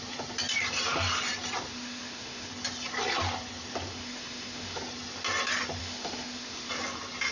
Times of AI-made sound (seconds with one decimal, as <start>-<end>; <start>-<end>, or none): 1.7-2.5; 3.9-4.8; 5.8-6.7